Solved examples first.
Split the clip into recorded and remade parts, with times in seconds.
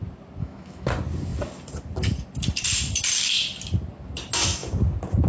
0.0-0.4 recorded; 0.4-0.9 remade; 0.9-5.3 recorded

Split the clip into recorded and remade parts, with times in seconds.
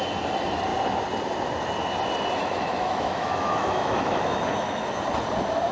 0.0-2.4 recorded; 2.4-4.8 remade; 4.8-5.7 recorded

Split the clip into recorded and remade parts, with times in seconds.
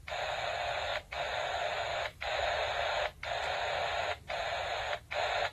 0.0-1.9 recorded; 1.9-2.5 remade; 2.5-5.5 recorded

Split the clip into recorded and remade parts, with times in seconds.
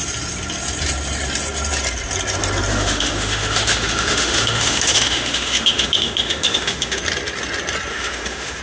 0.0-2.7 recorded; 2.7-7.0 remade; 7.0-7.9 recorded; 7.9-8.6 remade